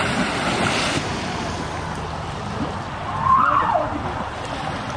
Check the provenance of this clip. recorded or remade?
recorded